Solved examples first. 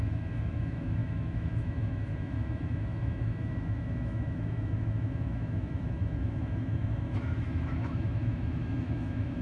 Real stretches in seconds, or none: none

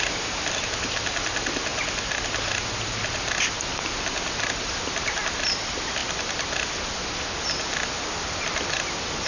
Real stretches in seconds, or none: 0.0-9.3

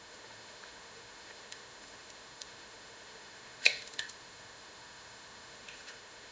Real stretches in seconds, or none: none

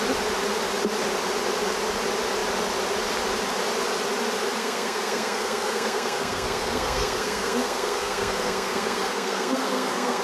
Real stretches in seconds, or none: 0.0-4.6

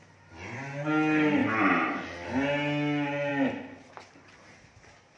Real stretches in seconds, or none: 0.0-5.2

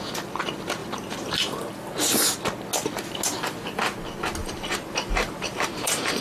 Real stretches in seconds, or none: 0.0-0.8; 1.7-4.4

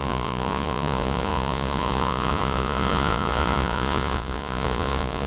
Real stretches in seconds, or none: none

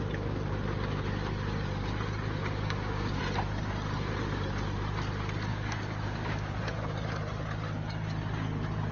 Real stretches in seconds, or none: 0.0-2.4; 3.2-5.5; 6.5-8.9